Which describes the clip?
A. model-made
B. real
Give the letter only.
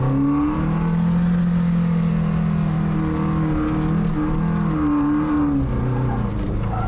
B